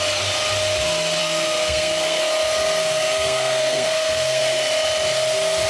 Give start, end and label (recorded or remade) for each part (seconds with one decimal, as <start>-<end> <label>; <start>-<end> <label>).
0.0-1.2 recorded; 1.2-2.2 remade; 2.2-2.8 recorded; 2.8-4.4 remade; 4.4-5.7 recorded

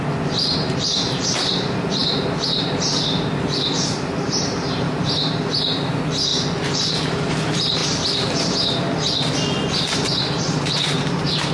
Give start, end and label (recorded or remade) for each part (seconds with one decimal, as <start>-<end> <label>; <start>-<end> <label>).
0.0-7.8 remade; 7.8-10.6 recorded; 10.6-11.5 remade

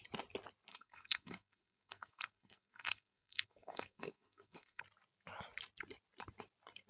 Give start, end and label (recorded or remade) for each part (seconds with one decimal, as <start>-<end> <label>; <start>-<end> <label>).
0.0-0.7 recorded; 0.7-4.8 remade; 4.8-6.9 recorded